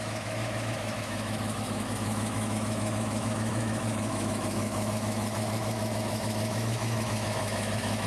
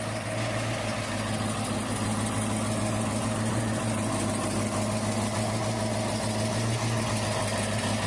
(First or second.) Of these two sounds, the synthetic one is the first